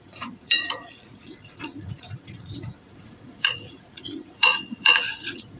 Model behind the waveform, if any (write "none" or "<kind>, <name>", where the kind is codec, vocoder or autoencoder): vocoder, Vocos